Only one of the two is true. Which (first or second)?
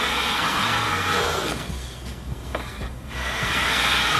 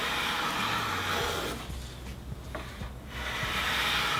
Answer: second